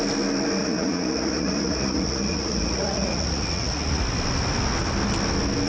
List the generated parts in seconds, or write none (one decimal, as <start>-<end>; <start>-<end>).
0.6-4.0